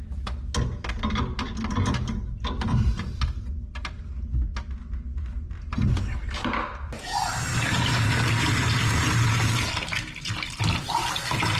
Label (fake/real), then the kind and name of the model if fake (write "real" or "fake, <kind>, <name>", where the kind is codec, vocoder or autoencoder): real